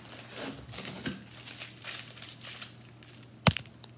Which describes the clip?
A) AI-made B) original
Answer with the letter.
B